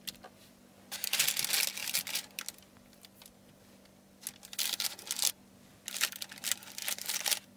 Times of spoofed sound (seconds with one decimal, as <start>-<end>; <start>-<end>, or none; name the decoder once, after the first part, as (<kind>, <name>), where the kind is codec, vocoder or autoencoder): none